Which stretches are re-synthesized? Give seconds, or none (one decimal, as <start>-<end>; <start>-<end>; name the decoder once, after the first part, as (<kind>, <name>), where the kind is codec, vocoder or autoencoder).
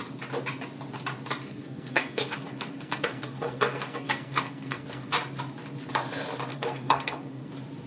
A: 1.5-5.1 (codec, SNAC); 6.5-7.5